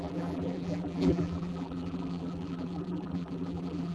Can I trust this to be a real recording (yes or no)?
no